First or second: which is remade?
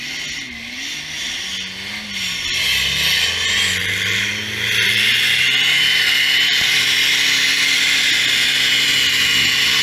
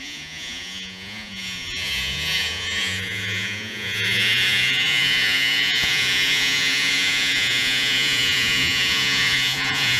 second